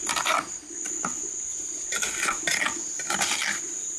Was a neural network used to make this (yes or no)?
no